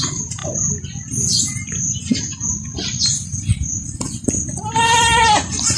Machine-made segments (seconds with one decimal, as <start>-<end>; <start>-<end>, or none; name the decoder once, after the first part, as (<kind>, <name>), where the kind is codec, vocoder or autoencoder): 2.9-4.6 (vocoder, BigVGAN v2)